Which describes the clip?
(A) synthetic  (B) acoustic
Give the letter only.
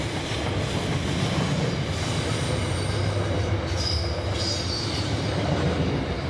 B